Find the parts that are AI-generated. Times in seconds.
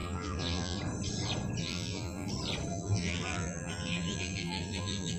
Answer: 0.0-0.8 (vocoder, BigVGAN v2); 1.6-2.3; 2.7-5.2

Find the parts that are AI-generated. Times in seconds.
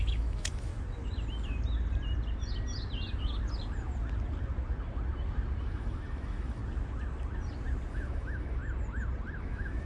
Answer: 0.0-0.7 (autoencoder, DAC-VAE); 5.6-6.6; 7.9-8.6; 9.4-9.9